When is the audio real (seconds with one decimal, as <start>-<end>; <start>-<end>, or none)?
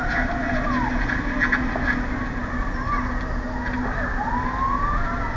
0.0-5.4